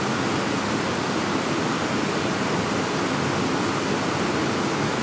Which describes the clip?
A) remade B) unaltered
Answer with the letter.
B